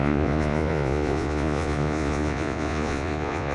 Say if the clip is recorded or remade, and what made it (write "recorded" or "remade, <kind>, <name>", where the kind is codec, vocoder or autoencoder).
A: remade, vocoder, Vocos